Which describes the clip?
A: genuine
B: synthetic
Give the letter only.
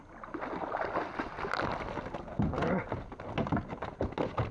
A